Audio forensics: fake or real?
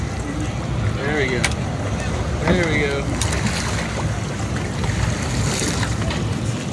real